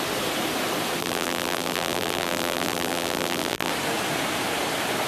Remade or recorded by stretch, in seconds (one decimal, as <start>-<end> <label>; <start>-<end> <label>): 0.0-1.0 recorded; 1.0-3.7 remade; 3.7-5.1 recorded